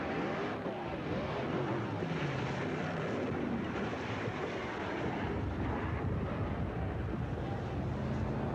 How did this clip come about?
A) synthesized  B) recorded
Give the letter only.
B